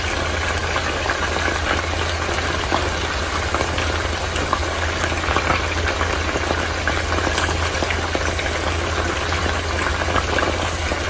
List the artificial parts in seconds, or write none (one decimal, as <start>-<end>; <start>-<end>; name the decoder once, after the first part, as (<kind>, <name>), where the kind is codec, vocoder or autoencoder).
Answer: none